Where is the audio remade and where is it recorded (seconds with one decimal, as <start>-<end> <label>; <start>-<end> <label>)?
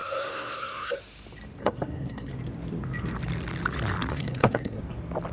0.0-1.0 remade; 1.0-1.6 recorded; 1.6-2.3 remade; 2.3-4.1 recorded; 4.1-4.8 remade; 4.8-5.3 recorded